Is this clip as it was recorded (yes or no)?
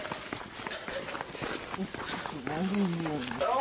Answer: yes